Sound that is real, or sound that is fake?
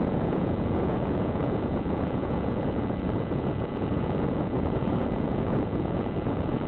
fake